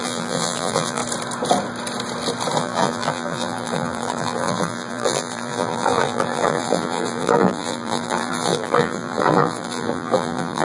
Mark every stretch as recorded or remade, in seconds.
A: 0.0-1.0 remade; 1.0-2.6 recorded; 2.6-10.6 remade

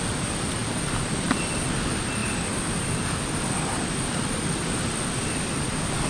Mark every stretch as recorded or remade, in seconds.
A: 0.0-0.6 recorded; 0.6-1.2 remade; 1.2-2.2 recorded; 2.2-6.1 remade

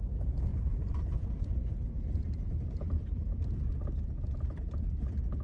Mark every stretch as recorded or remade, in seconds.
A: 0.0-0.5 recorded; 0.5-3.7 remade; 3.7-5.4 recorded

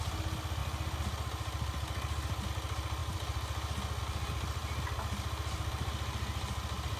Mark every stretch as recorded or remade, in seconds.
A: 0.0-7.0 recorded

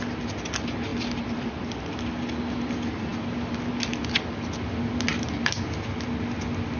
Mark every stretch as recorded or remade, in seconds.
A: 0.0-0.9 recorded; 0.9-1.5 remade; 1.5-6.8 recorded

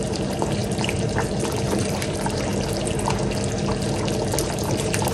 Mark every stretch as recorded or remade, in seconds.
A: 0.0-2.5 remade; 2.5-4.4 recorded; 4.4-5.1 remade